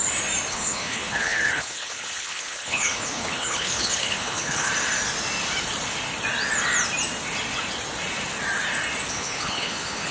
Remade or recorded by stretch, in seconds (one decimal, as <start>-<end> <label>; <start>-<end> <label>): 0.0-0.5 recorded; 0.5-4.7 remade; 4.7-9.1 recorded; 9.1-10.1 remade